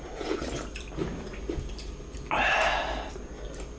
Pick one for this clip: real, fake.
real